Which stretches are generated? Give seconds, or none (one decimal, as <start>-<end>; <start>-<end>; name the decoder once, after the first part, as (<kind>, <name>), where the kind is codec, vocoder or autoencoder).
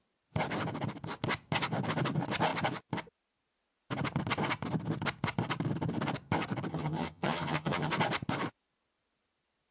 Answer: 6.7-7.9 (vocoder, HiFi-GAN)